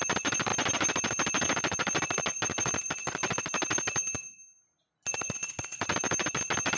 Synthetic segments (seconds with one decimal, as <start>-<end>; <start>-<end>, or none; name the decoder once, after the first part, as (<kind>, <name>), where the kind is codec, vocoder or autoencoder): none